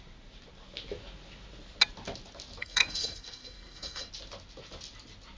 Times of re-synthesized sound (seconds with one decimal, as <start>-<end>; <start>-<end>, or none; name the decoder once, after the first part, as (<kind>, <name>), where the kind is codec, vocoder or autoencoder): 2.6-4.1 (codec, SNAC)